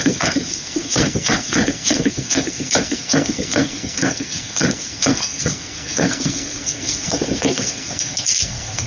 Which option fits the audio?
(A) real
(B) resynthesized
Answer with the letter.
B